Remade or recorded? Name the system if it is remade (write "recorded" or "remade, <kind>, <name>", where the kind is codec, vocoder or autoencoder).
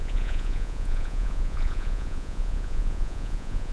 remade, vocoder, Vocos